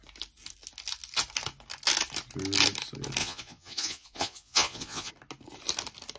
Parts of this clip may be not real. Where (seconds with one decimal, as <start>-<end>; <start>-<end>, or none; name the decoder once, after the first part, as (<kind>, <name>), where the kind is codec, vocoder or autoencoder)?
3.2-5.1 (vocoder, Vocos)